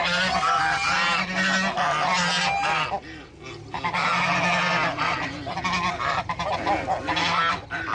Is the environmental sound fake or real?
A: real